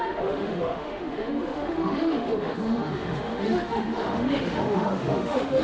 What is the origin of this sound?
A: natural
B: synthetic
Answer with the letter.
B